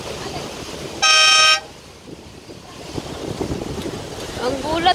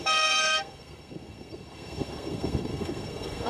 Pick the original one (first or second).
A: first